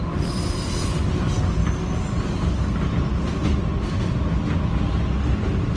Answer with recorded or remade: recorded